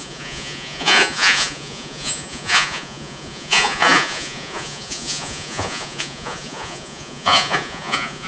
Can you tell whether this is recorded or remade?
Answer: remade